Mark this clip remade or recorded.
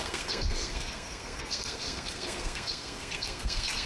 remade